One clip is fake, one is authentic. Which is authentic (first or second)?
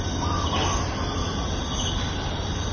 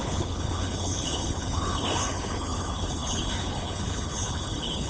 first